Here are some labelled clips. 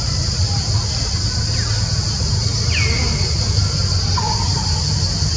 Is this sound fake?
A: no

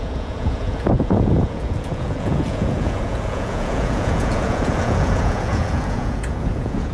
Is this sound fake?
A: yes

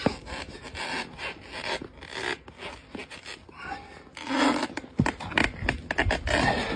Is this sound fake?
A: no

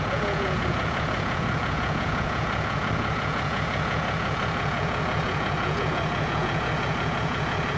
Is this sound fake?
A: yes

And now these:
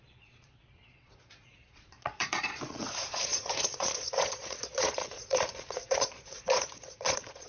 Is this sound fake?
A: yes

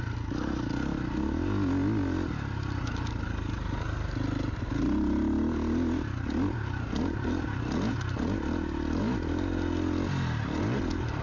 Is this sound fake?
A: no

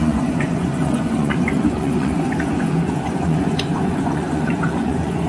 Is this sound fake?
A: yes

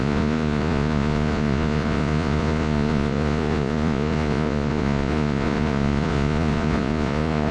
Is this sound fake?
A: yes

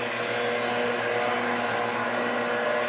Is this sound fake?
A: no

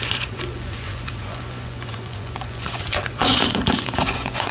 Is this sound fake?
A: yes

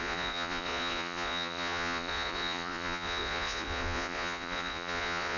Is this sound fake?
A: yes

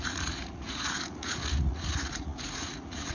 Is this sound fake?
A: yes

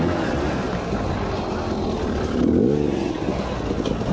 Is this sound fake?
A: no